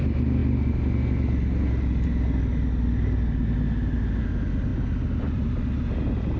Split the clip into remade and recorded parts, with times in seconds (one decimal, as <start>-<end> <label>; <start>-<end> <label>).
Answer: 0.0-6.4 recorded